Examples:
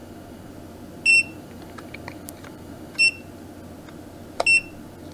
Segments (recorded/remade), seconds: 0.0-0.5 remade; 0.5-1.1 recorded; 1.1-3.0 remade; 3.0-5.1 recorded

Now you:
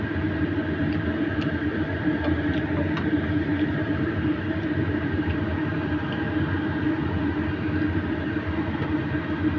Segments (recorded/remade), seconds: 0.0-3.5 recorded; 3.5-6.1 remade; 6.1-9.6 recorded

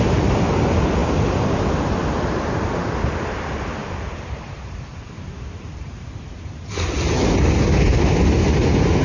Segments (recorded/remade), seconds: 0.0-3.8 recorded; 3.8-6.3 remade; 6.3-9.0 recorded

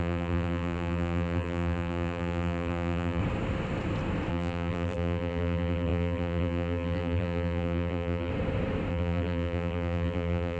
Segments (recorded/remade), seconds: 0.0-3.2 remade; 3.2-4.3 recorded; 4.3-8.3 remade; 8.3-8.9 recorded; 8.9-10.6 remade

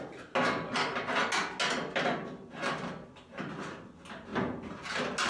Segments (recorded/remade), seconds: 0.0-5.3 recorded

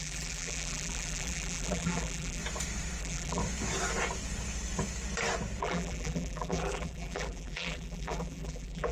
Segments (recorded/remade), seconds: 0.0-2.4 remade; 2.4-3.0 recorded; 3.0-3.4 remade; 3.4-5.6 recorded; 5.6-8.9 remade

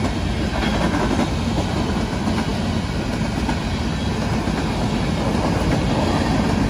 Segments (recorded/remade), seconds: 0.0-6.7 recorded